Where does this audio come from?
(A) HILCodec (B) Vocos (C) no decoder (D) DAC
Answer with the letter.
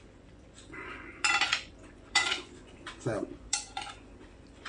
B